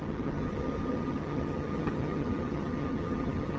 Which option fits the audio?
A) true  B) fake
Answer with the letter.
B